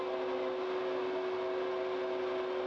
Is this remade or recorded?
recorded